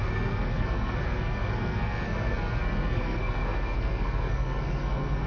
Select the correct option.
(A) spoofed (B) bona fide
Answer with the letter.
A